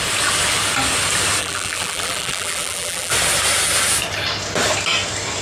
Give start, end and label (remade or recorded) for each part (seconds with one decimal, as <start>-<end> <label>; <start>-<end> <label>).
0.0-1.4 recorded; 1.4-3.1 remade; 3.1-5.4 recorded

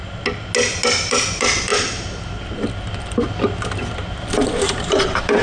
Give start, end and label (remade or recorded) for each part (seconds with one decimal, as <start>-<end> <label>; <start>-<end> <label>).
0.0-1.1 recorded; 1.1-1.7 remade; 1.7-4.3 recorded; 4.3-5.4 remade